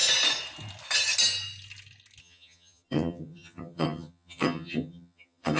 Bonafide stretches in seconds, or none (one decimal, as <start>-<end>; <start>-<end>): 0.0-2.2